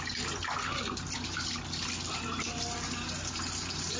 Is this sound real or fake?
real